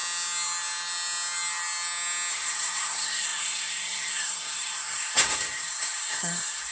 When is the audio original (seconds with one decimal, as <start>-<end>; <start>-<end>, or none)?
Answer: 0.0-2.3